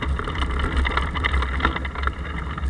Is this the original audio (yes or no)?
yes